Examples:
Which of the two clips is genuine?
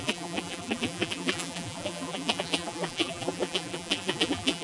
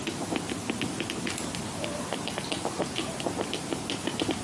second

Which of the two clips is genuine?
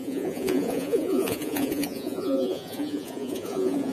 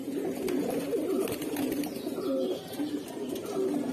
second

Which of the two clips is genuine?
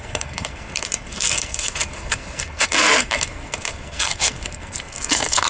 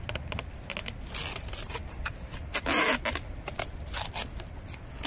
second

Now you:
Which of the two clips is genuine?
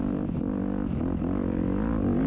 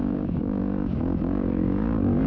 first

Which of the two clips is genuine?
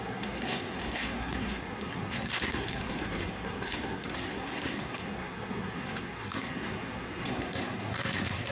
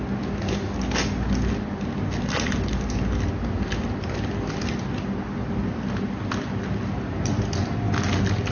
second